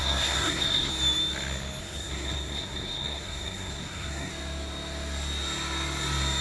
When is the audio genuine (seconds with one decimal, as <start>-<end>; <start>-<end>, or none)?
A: 0.9-1.8; 4.3-6.4